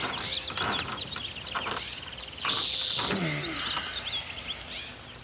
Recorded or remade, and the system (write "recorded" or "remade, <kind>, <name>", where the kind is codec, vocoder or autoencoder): recorded